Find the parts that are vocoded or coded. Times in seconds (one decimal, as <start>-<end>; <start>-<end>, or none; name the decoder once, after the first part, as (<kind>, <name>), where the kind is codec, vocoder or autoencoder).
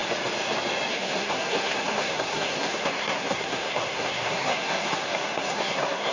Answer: 0.9-6.1 (codec, SNAC)